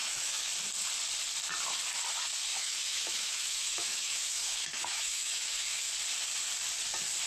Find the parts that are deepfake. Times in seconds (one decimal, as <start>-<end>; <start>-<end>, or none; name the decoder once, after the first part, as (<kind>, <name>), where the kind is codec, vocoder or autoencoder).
0.0-0.5 (autoencoder, DAC-VAE); 2.5-5.9